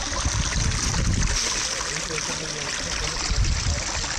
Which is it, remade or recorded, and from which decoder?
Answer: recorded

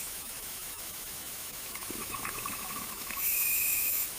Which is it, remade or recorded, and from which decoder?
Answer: remade, autoencoder, DAC-VAE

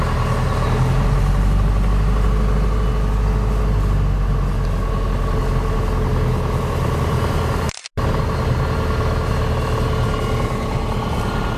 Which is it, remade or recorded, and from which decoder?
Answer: recorded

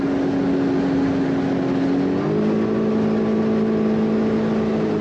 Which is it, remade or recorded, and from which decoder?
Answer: recorded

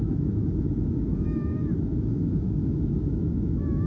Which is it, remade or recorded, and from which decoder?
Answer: remade, autoencoder, DAC-VAE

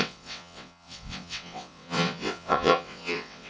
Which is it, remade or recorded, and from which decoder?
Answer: remade, vocoder, WaveNeXt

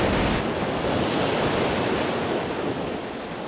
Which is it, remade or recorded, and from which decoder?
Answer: recorded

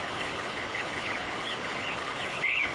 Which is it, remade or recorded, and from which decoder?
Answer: remade, codec, HILCodec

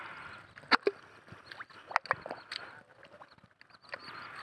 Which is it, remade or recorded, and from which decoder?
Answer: recorded